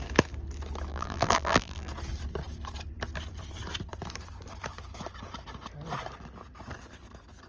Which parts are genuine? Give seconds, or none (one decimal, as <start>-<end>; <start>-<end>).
0.0-0.9; 1.9-7.5